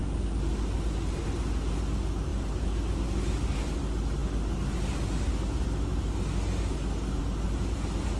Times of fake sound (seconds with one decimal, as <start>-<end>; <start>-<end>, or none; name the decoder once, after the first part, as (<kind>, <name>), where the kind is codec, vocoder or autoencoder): none